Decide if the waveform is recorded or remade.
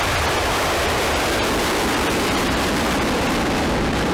remade